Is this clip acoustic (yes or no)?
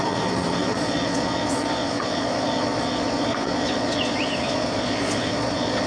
no